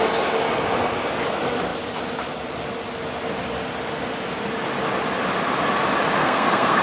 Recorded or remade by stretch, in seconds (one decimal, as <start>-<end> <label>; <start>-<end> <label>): 0.0-6.2 recorded; 6.2-6.8 remade